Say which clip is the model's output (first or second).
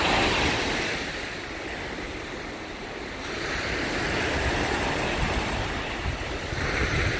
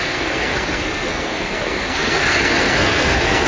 second